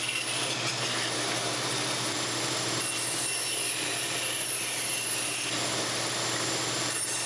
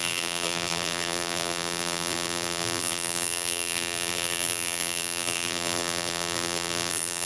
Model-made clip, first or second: second